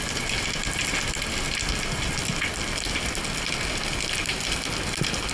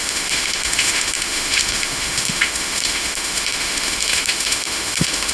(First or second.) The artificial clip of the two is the second